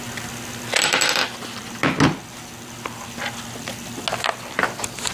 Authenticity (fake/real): real